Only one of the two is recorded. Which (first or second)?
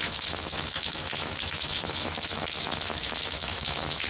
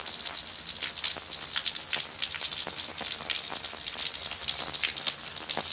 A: second